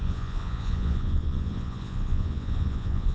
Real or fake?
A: fake